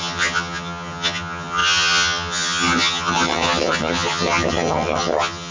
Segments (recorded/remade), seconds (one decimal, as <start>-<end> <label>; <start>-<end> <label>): 0.0-5.5 remade

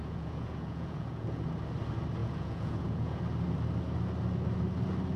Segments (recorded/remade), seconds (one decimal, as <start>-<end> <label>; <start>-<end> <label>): 0.0-1.4 remade; 1.4-2.2 recorded; 2.2-3.2 remade; 3.2-5.2 recorded

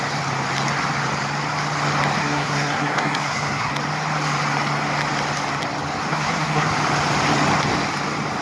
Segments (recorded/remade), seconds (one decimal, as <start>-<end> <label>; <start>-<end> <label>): 0.0-2.2 recorded; 2.2-3.7 remade; 3.7-6.1 recorded; 6.1-6.7 remade; 6.7-8.4 recorded

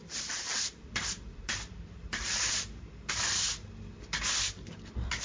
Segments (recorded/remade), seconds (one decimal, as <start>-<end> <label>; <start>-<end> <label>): 0.0-3.1 remade; 3.1-5.2 recorded

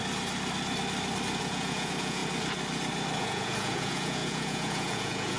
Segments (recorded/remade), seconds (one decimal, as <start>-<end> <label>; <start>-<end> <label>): 0.0-1.4 recorded; 1.4-2.2 remade; 2.2-3.2 recorded; 3.2-5.4 remade

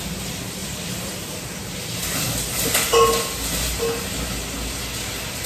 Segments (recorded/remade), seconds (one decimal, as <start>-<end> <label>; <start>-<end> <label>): 0.0-0.6 recorded; 0.6-2.0 remade; 2.0-5.5 recorded

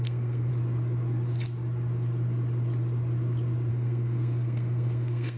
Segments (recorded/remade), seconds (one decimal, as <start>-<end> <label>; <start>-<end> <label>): 0.0-0.5 remade; 0.5-3.7 recorded; 3.7-5.4 remade

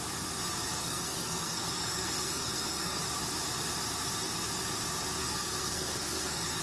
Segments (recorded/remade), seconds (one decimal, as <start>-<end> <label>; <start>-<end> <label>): 0.0-0.8 recorded; 0.8-3.0 remade; 3.0-5.2 recorded; 5.2-6.6 remade